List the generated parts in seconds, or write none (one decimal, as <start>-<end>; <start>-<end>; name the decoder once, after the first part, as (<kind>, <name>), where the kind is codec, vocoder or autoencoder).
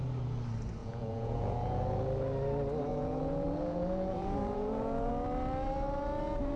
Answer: 0.8-2.0 (vocoder, Vocos); 2.9-5.1